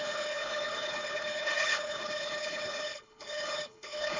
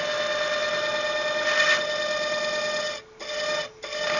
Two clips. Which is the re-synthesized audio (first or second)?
first